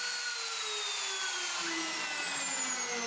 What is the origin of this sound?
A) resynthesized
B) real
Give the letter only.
B